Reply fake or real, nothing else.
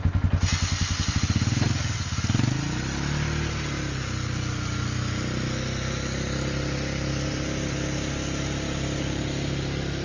real